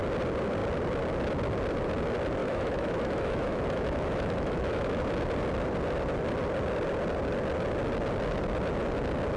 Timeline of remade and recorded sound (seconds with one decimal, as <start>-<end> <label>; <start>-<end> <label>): 0.0-2.4 recorded; 2.4-5.0 remade; 5.0-9.4 recorded